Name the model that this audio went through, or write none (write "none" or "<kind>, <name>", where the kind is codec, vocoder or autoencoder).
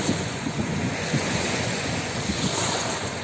vocoder, Vocos